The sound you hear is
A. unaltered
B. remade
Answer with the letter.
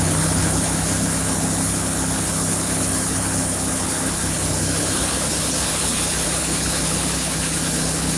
B